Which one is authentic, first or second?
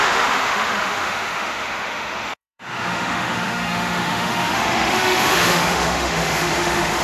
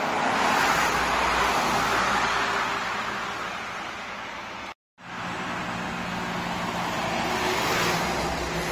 second